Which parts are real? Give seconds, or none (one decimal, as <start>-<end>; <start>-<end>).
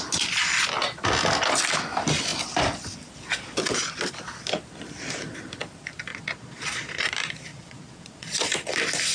0.0-6.1; 7.1-7.5; 8.5-9.1